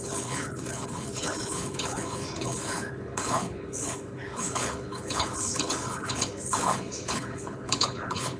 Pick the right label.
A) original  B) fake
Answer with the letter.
B